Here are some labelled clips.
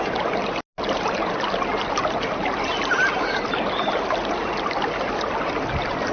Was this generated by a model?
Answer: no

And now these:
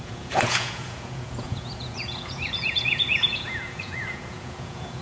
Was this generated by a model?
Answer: yes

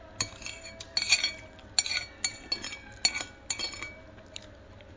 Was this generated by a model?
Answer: no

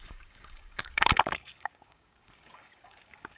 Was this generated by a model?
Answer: yes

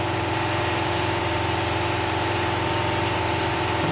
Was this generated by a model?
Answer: yes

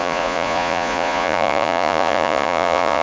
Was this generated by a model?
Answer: yes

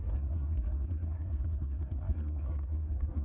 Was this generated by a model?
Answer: yes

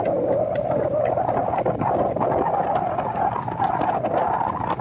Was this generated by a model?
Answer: no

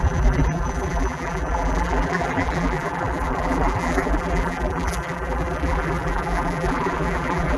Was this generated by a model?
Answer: yes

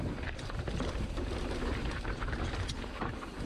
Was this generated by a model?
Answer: no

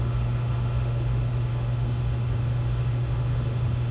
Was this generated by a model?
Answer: yes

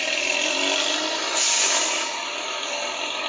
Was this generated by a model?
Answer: no